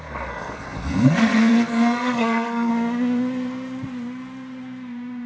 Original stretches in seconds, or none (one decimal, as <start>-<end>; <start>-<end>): 2.7-5.3